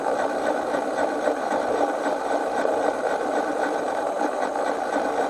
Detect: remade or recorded remade